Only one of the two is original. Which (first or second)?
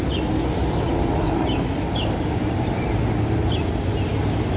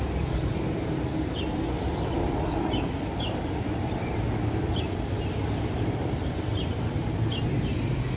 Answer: first